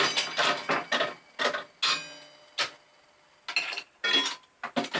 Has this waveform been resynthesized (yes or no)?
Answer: no